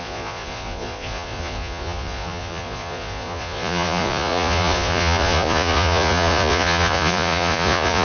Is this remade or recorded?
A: remade